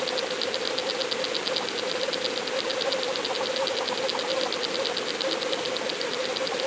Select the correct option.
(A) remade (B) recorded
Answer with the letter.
B